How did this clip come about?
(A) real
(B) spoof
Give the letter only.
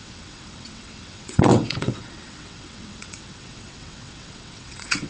B